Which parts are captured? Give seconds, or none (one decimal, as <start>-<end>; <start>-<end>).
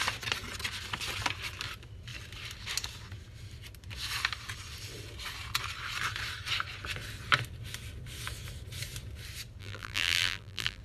0.0-9.6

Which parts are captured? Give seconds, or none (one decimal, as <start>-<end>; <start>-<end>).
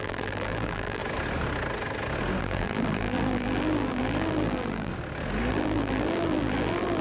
1.0-2.4; 4.9-5.5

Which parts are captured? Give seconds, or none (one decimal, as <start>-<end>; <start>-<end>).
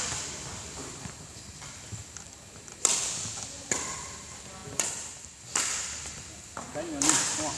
none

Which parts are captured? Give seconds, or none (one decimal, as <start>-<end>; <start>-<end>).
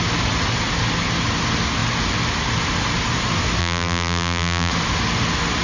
0.0-3.6; 4.7-5.6